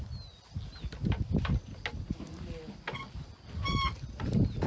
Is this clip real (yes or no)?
yes